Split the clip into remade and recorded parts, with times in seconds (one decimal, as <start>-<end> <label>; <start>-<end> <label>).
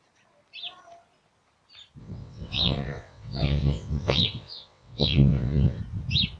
0.0-2.0 recorded; 2.0-5.8 remade; 5.8-6.4 recorded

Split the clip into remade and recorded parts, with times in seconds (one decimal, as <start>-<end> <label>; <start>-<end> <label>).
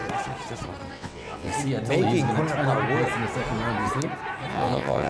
0.0-0.9 recorded; 0.9-1.5 remade; 1.5-4.5 recorded; 4.5-5.1 remade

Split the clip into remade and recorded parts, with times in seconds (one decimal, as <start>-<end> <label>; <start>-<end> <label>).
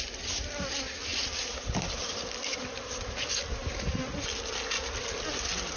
0.0-5.8 recorded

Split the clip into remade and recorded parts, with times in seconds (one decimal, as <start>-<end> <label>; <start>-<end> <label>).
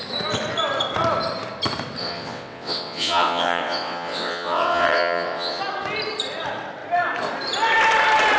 0.0-2.0 recorded; 2.0-5.6 remade; 5.6-8.4 recorded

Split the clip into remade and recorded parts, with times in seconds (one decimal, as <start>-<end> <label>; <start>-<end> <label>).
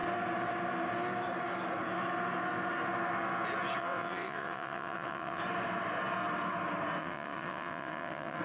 0.0-3.8 recorded; 3.8-5.4 remade; 5.4-7.0 recorded; 7.0-8.4 remade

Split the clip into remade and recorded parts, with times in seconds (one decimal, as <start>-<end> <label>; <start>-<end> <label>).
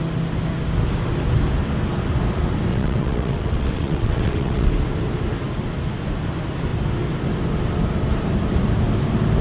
0.0-2.7 recorded; 2.7-4.7 remade; 4.7-9.4 recorded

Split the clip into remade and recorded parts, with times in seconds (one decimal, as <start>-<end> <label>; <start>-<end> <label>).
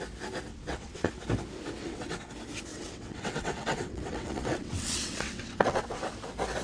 0.0-0.5 recorded; 0.5-1.1 remade; 1.1-1.8 recorded; 1.8-2.3 remade; 2.3-2.7 recorded; 2.7-6.0 remade; 6.0-6.6 recorded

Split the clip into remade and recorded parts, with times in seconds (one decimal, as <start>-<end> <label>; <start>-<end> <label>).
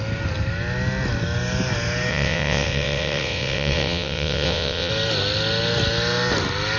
0.0-2.1 recorded; 2.1-4.9 remade; 4.9-6.8 recorded